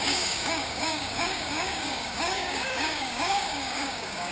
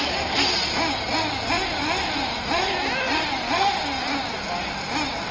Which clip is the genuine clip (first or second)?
second